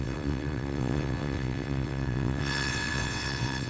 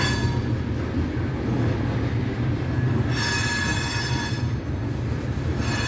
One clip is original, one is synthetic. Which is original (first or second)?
second